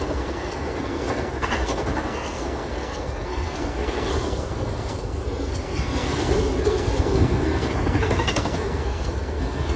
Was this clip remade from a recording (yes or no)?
yes